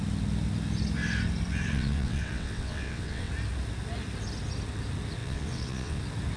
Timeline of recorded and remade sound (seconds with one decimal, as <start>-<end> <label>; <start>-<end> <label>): 0.0-1.7 recorded; 1.7-3.3 remade; 3.3-5.2 recorded; 5.2-6.0 remade; 6.0-6.4 recorded